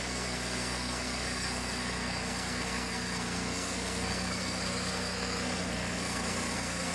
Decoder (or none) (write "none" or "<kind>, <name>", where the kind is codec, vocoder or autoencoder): codec, SNAC